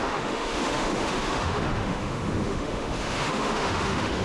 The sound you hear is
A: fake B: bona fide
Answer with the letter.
A